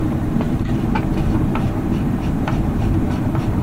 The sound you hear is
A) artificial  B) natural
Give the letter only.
A